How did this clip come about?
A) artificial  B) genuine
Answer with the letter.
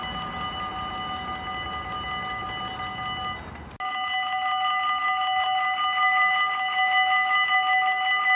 B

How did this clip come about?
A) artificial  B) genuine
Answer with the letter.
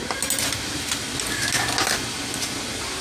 B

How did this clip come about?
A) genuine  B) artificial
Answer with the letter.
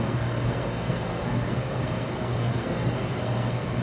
B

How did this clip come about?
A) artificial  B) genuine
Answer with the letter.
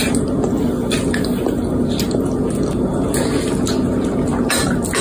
B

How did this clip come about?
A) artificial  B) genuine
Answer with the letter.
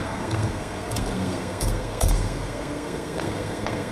A